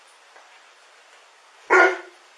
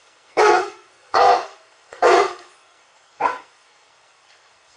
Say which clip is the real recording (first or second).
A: first